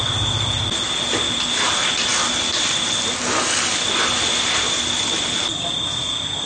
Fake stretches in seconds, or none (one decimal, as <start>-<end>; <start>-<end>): none